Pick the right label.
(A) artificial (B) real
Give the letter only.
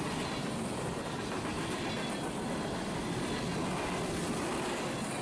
B